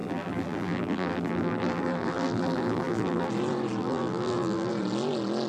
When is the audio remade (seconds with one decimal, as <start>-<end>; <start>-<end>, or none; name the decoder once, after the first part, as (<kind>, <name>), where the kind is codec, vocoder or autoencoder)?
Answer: 0.0-3.3 (vocoder, BigVGAN v2); 3.8-4.7